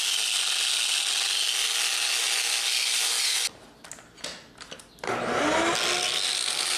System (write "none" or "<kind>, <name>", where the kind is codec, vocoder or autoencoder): none